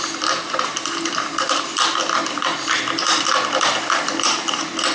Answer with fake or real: fake